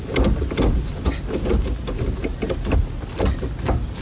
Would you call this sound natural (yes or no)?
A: yes